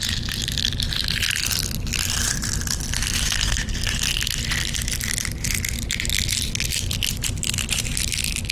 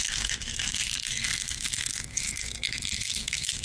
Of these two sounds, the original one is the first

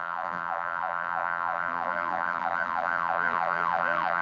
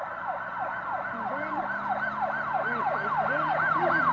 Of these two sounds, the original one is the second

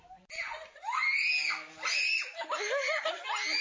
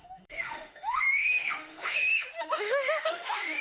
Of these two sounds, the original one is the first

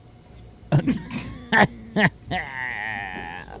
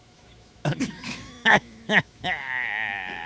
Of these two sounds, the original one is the first